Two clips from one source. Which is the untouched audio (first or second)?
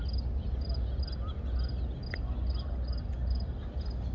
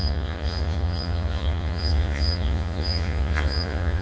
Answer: first